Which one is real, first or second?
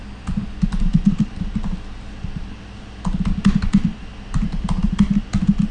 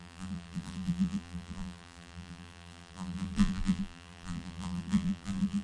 first